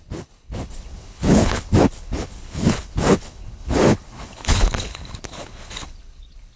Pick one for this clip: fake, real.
fake